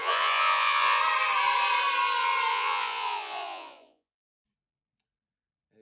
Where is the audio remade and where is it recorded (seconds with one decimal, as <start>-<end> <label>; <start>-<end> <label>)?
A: 0.0-1.0 remade; 1.0-2.5 recorded; 2.5-4.2 remade; 4.2-5.8 recorded